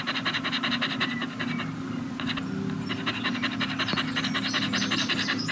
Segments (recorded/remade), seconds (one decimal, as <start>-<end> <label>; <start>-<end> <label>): 0.0-5.5 recorded